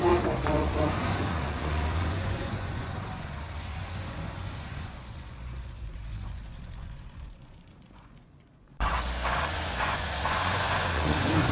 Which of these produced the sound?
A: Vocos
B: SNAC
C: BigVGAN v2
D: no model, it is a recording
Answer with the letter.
A